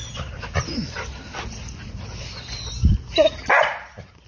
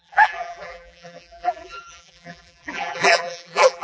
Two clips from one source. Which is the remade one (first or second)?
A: second